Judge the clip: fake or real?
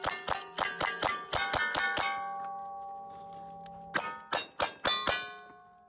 real